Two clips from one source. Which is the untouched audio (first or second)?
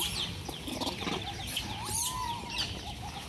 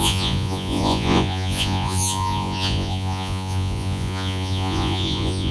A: first